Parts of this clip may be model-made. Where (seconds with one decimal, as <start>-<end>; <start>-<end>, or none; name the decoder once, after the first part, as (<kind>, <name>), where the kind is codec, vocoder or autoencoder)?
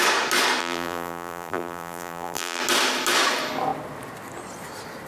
0.6-2.6 (vocoder, BigVGAN v2)